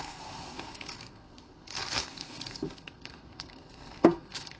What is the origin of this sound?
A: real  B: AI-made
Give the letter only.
B